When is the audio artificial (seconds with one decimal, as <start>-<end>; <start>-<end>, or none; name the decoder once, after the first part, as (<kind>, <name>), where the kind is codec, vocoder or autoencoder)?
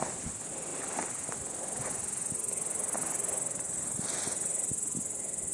none